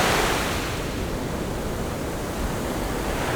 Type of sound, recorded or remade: recorded